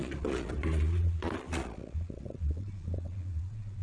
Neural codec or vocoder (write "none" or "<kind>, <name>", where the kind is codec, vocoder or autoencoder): vocoder, Vocos